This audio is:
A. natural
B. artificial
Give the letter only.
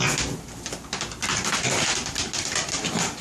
A